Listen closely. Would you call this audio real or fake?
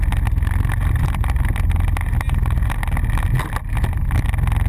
real